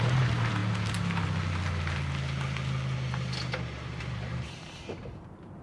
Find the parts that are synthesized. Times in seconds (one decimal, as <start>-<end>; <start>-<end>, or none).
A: 0.0-0.6; 4.0-5.6